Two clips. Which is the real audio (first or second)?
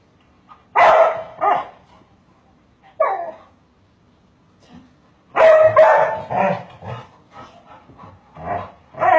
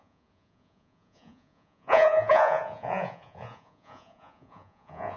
first